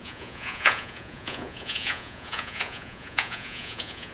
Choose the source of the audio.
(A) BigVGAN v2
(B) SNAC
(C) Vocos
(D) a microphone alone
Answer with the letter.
C